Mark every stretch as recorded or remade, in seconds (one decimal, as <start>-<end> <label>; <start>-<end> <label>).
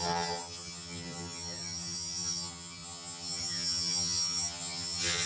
0.0-5.3 remade